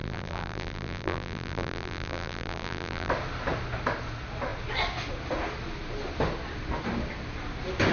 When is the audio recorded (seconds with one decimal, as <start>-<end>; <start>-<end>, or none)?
3.1-7.9